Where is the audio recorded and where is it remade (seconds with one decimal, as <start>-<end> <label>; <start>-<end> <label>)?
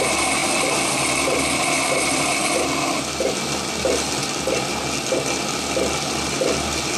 0.0-7.0 recorded